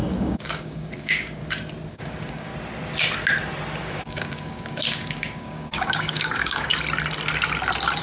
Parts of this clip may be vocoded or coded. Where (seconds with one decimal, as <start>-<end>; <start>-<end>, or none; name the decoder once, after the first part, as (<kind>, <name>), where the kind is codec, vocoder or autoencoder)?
0.0-1.4 (codec, DAC); 1.9-2.5; 3.8-6.7